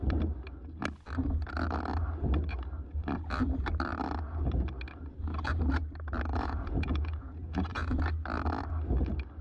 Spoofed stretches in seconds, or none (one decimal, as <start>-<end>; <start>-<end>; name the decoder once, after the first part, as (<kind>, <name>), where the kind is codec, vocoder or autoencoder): 6.3-8.0 (vocoder, Vocos)